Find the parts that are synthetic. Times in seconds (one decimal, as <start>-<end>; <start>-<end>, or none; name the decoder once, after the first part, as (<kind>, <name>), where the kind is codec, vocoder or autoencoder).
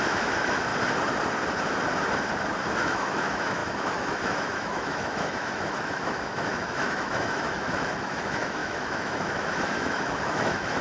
0.0-0.7 (autoencoder, DAC-VAE); 2.8-10.8